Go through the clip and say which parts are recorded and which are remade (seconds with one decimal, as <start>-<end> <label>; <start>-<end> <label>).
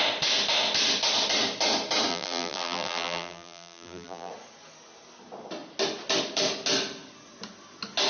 0.0-2.1 recorded; 2.1-4.3 remade; 4.3-8.1 recorded